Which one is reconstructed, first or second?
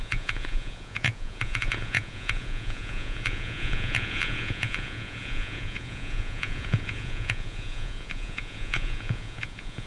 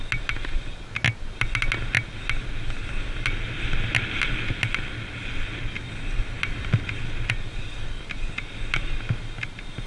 first